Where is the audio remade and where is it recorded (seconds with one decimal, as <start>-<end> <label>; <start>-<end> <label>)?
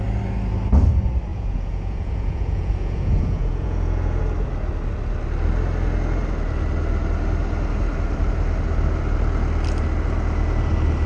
0.0-1.3 recorded; 1.3-4.2 remade; 4.2-11.1 recorded